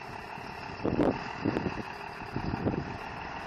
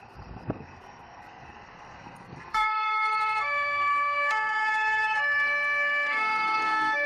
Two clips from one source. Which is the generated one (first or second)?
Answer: second